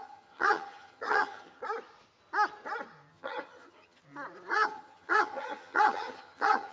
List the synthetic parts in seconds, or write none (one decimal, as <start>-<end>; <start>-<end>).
0.0-1.6; 3.1-4.0; 4.5-6.7